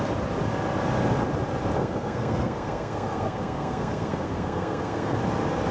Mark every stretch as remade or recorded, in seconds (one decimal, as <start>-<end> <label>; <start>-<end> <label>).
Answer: 0.0-1.8 recorded; 1.8-5.2 remade; 5.2-5.7 recorded

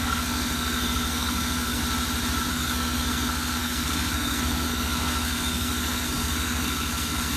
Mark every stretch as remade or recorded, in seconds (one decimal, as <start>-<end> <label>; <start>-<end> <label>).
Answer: 0.0-1.8 remade; 1.8-2.5 recorded; 2.5-7.4 remade

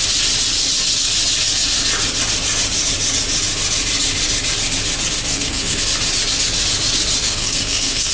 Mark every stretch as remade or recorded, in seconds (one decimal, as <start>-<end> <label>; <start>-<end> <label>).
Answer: 0.0-5.3 recorded; 5.3-5.8 remade; 5.8-7.2 recorded; 7.2-8.1 remade

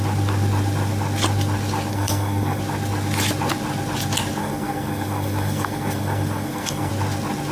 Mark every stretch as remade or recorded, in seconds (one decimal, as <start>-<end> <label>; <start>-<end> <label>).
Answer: 0.0-1.9 recorded; 1.9-2.6 remade; 2.6-4.4 recorded; 4.4-6.9 remade; 6.9-7.5 recorded

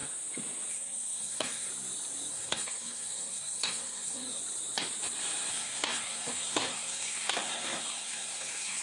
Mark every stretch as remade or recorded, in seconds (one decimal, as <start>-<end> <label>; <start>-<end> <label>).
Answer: 0.0-0.7 recorded; 0.7-1.7 remade; 1.7-2.3 recorded; 2.3-4.4 remade; 4.4-5.5 recorded; 5.5-8.8 remade

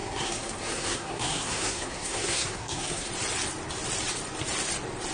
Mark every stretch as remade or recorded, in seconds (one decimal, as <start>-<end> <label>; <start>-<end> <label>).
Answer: 0.0-3.1 remade; 3.1-5.1 recorded

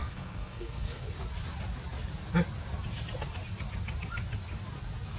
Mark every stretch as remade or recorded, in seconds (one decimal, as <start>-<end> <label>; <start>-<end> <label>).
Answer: 0.0-1.1 remade; 1.1-5.2 recorded